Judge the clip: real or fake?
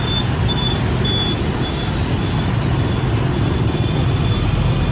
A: real